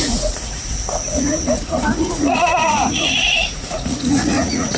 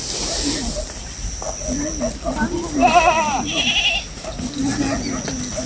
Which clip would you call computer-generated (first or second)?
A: first